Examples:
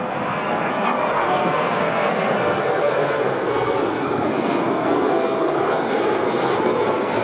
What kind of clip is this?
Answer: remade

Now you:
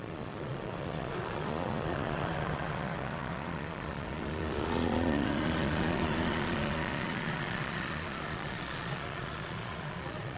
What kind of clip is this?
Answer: remade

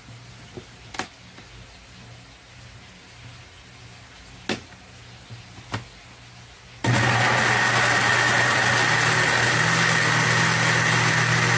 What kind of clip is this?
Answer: recorded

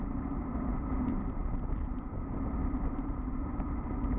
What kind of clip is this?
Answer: remade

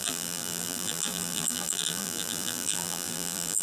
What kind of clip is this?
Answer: remade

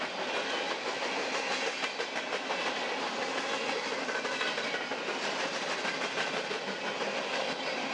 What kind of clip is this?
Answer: recorded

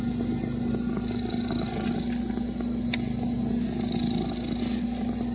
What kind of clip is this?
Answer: recorded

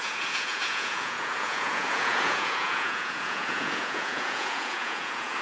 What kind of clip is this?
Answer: remade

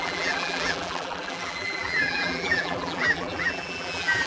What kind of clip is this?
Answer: remade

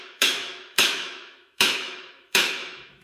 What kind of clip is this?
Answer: remade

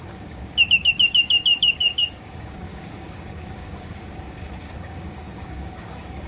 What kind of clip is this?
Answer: remade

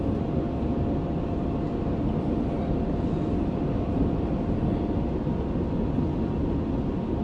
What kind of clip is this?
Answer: recorded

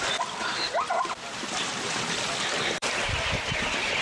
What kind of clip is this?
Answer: remade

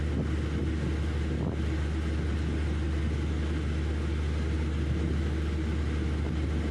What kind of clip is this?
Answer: recorded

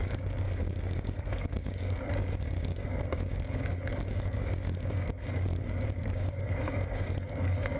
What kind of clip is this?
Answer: remade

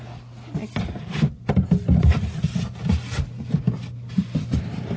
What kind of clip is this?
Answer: recorded